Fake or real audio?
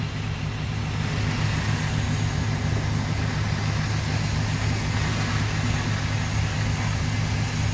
real